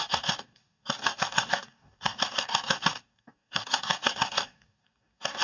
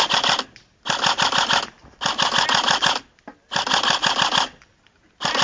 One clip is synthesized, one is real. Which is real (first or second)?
second